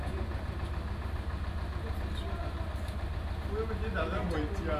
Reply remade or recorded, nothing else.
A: recorded